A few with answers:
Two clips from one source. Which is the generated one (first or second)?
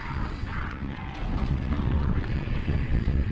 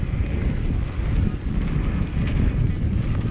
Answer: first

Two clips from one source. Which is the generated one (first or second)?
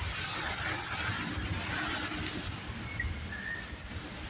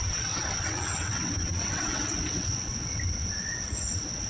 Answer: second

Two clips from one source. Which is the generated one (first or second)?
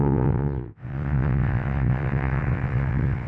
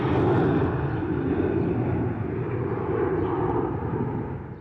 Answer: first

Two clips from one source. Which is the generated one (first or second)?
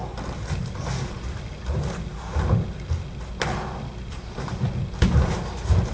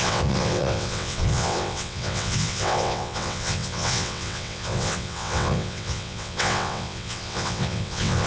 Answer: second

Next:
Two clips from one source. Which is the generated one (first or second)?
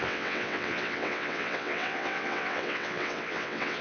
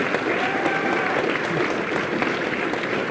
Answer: first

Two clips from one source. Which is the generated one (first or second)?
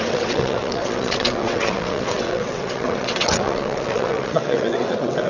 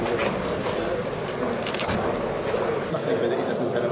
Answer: first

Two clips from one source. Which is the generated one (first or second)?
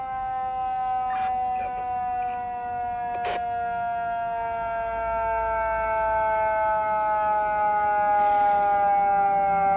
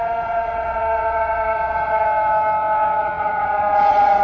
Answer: second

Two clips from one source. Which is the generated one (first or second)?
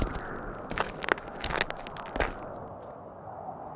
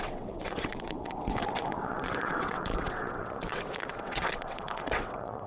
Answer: second